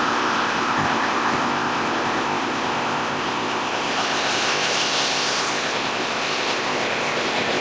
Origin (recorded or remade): remade